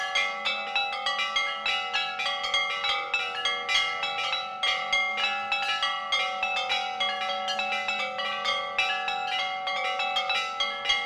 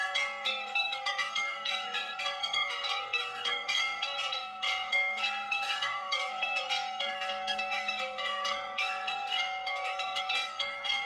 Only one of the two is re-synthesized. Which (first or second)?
second